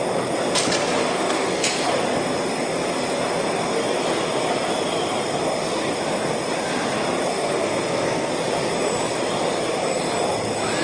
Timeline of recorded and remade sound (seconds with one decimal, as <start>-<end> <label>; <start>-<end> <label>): 0.0-1.1 recorded; 1.1-1.9 remade; 1.9-7.3 recorded; 7.3-8.3 remade; 8.3-10.8 recorded